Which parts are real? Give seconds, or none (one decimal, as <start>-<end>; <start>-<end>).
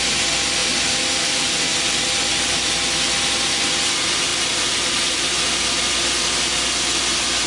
0.0-0.6; 1.8-4.3; 6.2-7.5